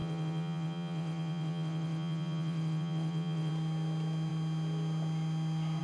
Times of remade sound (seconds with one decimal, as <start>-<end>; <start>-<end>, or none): 0.0-3.5